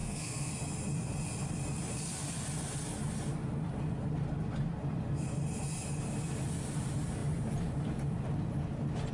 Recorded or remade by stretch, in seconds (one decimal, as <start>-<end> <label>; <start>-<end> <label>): 0.0-0.5 remade; 0.5-9.1 recorded